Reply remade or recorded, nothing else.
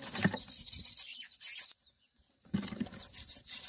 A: recorded